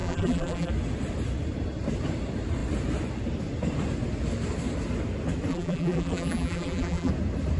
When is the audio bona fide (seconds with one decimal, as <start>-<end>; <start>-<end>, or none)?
0.7-5.5; 7.1-7.6